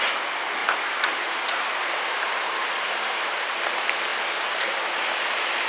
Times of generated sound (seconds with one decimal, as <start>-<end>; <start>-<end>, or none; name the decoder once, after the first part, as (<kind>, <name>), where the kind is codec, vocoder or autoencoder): 0.6-3.2 (vocoder, BigVGAN v2)